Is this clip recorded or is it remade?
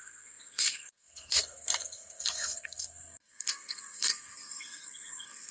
remade